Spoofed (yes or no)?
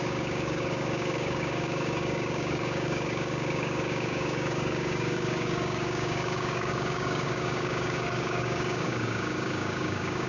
yes